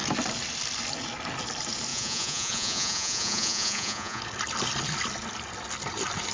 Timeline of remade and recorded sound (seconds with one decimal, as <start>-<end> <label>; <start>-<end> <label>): 0.0-1.9 recorded; 1.9-4.2 remade; 4.2-6.3 recorded